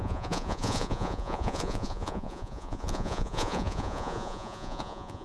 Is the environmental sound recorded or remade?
remade